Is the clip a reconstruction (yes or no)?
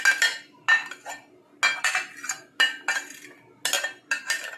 no